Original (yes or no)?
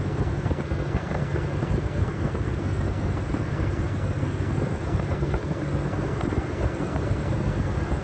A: no